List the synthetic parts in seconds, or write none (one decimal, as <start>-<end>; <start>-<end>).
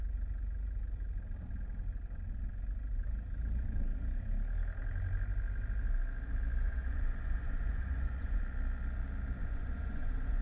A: 6.6-8.4; 9.4-10.4